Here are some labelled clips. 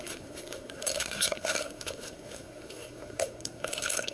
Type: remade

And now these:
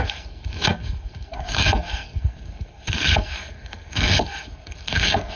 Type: remade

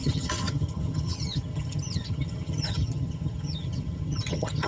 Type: remade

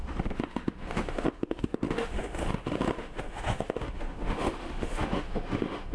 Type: remade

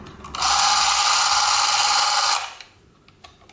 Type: recorded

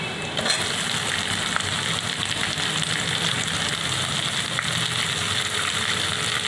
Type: recorded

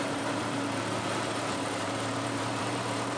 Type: remade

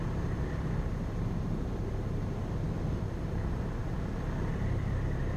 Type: recorded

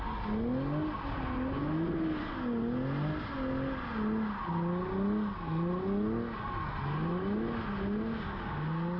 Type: recorded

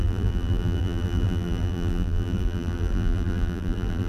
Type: remade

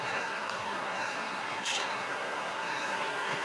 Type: remade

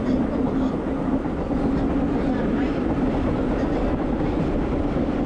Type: recorded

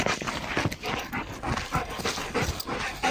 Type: recorded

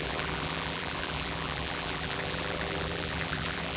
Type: remade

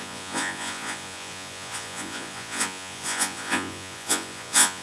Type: remade